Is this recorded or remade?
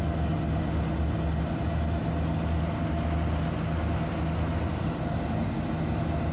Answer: recorded